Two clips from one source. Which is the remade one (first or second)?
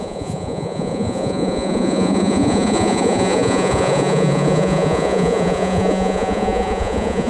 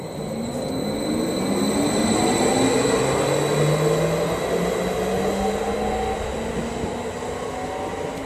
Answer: first